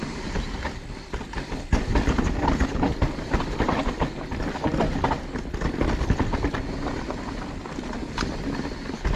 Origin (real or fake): real